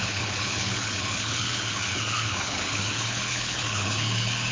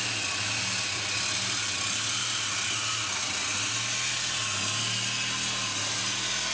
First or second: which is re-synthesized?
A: first